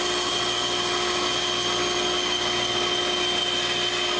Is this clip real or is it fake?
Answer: real